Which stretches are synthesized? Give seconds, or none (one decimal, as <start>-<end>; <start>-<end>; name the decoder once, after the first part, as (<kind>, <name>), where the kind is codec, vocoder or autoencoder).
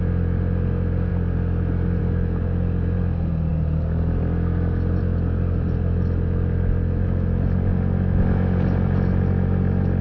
none